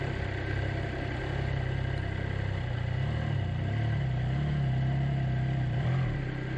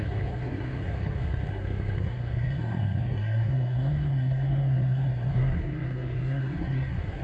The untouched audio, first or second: first